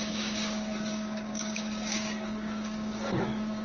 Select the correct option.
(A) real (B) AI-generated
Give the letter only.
B